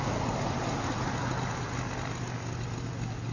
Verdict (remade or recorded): recorded